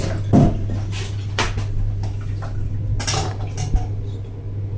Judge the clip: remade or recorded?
recorded